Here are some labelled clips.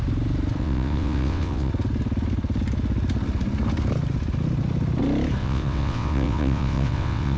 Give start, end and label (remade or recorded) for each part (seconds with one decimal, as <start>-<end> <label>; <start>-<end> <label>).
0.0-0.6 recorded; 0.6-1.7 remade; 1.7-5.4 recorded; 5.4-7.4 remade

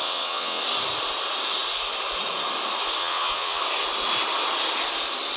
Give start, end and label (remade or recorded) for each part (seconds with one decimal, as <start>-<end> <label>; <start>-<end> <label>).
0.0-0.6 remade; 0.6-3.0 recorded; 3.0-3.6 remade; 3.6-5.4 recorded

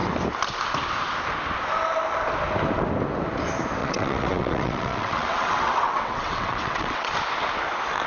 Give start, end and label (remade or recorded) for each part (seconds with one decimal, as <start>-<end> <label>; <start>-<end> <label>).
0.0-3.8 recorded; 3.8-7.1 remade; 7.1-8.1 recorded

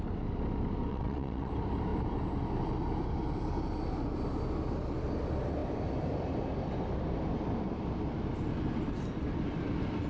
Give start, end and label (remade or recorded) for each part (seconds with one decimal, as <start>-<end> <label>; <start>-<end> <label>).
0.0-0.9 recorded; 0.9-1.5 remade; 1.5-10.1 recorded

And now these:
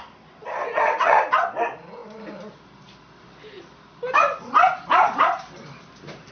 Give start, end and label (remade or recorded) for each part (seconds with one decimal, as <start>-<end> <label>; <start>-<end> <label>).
0.0-0.6 recorded; 0.6-1.2 remade; 1.2-6.3 recorded

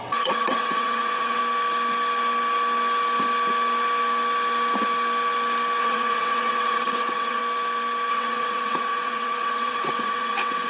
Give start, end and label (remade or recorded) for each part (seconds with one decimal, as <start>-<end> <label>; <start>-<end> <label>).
0.0-1.4 remade; 1.4-5.8 recorded; 5.8-7.4 remade; 7.4-8.1 recorded; 8.1-10.7 remade